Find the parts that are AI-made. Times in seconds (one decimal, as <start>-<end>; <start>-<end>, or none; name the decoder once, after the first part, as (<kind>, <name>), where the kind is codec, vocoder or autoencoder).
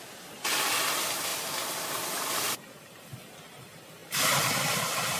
none